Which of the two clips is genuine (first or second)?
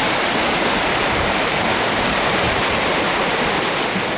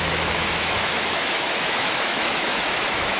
first